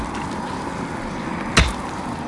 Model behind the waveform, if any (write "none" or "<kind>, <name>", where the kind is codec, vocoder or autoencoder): none